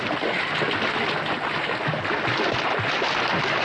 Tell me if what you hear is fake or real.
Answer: real